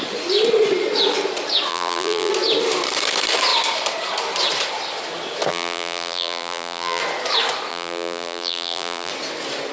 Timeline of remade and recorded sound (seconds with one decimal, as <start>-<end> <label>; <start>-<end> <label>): 0.0-1.7 recorded; 1.7-2.3 remade; 2.3-5.5 recorded; 5.5-7.0 remade; 7.0-7.7 recorded; 7.7-9.1 remade; 9.1-9.7 recorded